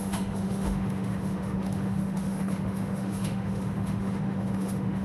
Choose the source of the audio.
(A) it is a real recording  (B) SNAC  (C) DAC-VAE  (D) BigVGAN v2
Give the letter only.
C